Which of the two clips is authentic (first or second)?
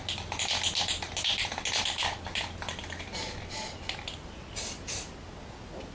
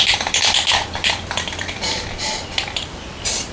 first